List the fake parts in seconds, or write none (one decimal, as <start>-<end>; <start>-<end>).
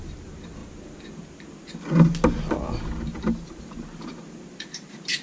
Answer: 0.0-0.6; 3.5-5.2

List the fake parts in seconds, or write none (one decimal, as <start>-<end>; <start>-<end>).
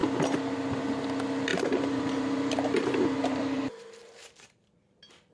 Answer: 1.5-4.7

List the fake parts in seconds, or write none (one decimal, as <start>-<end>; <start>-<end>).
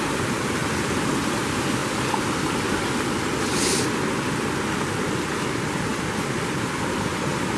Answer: 0.6-1.1